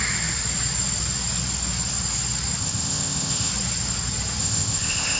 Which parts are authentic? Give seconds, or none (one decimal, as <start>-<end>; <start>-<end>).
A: 0.0-2.6; 3.5-4.4